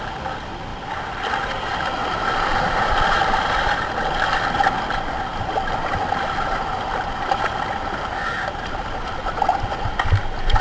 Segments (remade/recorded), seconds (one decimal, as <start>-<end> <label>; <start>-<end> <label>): 0.0-0.7 recorded; 0.7-4.0 remade; 4.0-5.3 recorded; 5.3-7.5 remade; 7.5-10.6 recorded

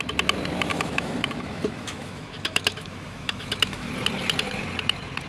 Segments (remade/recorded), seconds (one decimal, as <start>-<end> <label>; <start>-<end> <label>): 0.0-0.7 recorded; 0.7-3.9 remade; 3.9-5.3 recorded

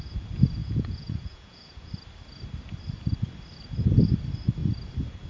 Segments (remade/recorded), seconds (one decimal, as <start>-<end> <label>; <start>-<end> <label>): 0.0-0.6 recorded; 0.6-1.9 remade; 1.9-5.3 recorded

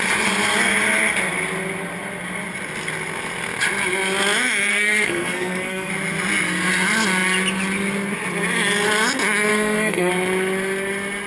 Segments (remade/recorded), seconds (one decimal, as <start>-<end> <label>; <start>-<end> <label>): 0.0-4.7 recorded; 4.7-5.9 remade; 5.9-9.5 recorded; 9.5-10.1 remade; 10.1-11.3 recorded

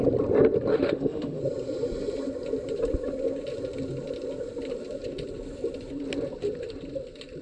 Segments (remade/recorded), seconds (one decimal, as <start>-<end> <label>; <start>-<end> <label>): 0.0-0.7 recorded; 0.7-1.4 remade; 1.4-7.4 recorded

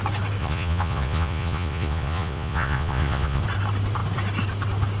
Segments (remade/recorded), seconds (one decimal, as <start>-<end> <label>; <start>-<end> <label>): 0.0-0.4 recorded; 0.4-3.4 remade; 3.4-5.0 recorded

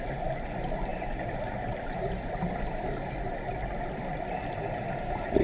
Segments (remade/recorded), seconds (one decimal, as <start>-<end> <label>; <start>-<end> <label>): 0.0-5.4 recorded